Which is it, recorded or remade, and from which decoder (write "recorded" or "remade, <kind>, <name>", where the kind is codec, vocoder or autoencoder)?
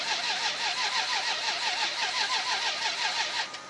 recorded